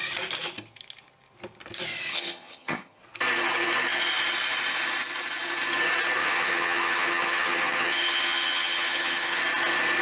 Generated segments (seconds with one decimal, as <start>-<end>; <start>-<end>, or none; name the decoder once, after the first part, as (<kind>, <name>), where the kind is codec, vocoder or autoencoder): 2.1-3.0 (vocoder, HiFi-GAN); 6.2-9.4